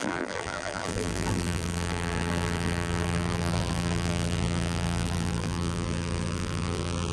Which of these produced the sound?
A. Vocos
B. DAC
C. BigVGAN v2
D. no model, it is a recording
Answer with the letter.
C